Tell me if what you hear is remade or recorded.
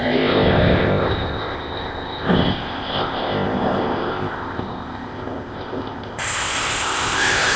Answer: remade